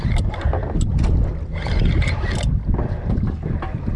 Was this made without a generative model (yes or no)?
yes